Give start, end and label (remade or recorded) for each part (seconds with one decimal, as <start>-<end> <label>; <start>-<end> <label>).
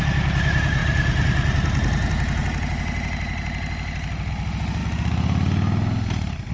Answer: 0.0-6.5 recorded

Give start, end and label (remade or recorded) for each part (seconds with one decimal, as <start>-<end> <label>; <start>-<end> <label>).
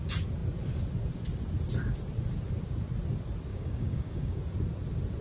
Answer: 0.0-3.5 recorded; 3.5-4.4 remade; 4.4-5.2 recorded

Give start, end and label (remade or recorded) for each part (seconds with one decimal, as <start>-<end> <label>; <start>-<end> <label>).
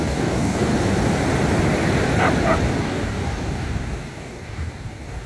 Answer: 0.0-0.7 remade; 0.7-2.8 recorded; 2.8-5.3 remade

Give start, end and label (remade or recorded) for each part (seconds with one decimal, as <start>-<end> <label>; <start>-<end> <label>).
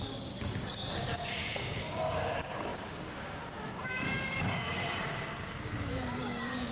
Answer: 0.0-6.7 remade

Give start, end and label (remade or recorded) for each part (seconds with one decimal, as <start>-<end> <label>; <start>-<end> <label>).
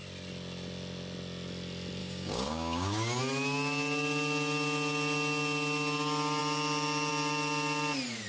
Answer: 0.0-2.0 recorded; 2.0-3.2 remade; 3.2-8.3 recorded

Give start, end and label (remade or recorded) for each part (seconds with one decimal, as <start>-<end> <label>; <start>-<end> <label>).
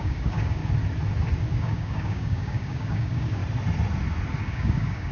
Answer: 0.0-0.6 remade; 0.6-1.5 recorded; 1.5-3.4 remade; 3.4-4.4 recorded; 4.4-5.1 remade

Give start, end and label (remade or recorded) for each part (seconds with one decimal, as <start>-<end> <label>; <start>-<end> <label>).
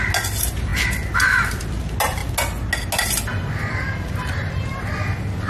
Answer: 0.0-5.5 recorded